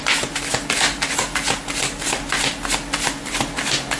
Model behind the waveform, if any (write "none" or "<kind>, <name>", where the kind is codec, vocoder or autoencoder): none